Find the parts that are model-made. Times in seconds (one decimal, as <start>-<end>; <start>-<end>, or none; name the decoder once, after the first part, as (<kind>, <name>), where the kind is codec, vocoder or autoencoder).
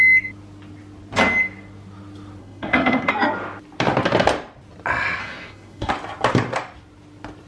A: 2.4-3.1 (codec, SNAC); 5.2-5.9